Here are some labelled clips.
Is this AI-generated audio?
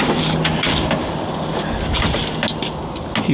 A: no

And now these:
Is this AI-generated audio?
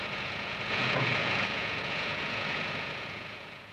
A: yes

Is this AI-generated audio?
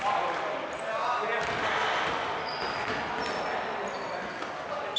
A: no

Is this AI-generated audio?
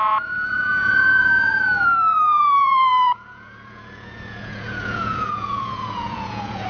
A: yes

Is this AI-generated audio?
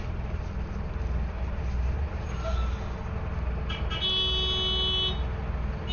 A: no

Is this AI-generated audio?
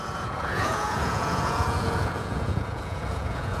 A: yes